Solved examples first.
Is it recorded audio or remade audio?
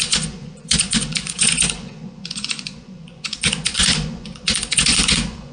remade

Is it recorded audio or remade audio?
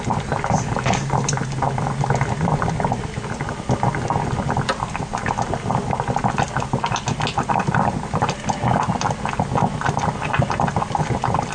recorded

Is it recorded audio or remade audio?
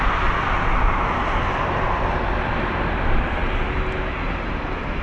recorded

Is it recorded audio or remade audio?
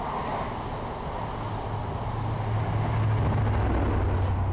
recorded